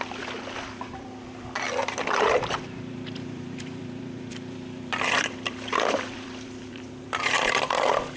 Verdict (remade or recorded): remade